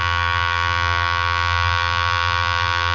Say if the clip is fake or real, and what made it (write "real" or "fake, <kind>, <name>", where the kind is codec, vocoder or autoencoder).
fake, vocoder, BigVGAN v2